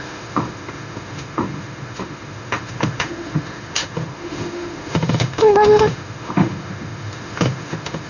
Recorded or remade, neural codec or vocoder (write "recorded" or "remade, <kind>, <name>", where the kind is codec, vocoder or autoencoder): remade, autoencoder, DAC-VAE